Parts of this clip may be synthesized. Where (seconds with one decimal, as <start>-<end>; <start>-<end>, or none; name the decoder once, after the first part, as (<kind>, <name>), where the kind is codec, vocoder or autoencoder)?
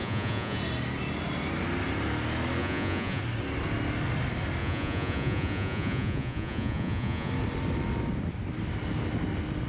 0.0-0.6 (vocoder, Vocos); 2.6-3.2; 4.6-7.3